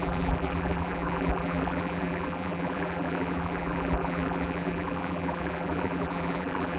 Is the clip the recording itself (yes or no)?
no